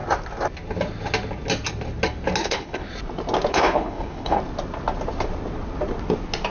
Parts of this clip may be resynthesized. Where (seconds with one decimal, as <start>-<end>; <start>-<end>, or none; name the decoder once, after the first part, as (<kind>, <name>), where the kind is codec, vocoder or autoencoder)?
2.4-2.9 (codec, HILCodec); 3.5-4.4